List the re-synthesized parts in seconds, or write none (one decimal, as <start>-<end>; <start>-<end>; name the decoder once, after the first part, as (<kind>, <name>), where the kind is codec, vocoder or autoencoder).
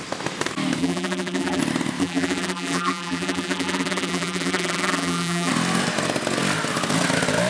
0.8-1.6 (vocoder, BigVGAN v2); 2.0-5.5